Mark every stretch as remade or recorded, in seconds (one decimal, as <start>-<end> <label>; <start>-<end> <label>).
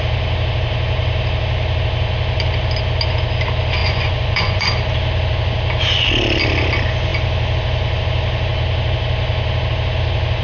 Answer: 0.0-3.8 recorded; 3.8-4.7 remade; 4.7-10.4 recorded